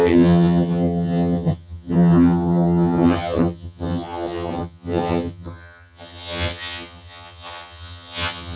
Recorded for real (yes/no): no